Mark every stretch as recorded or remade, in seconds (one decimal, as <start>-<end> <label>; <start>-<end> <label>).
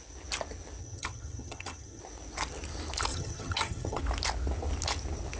0.0-0.8 recorded; 0.8-2.0 remade; 2.0-3.1 recorded; 3.1-4.0 remade; 4.0-5.4 recorded